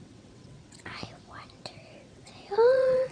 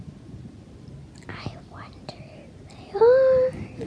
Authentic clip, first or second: second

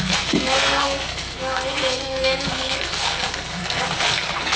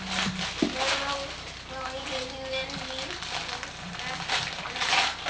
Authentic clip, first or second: second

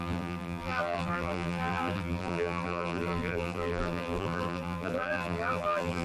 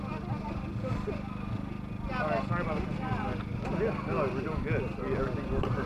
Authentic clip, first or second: second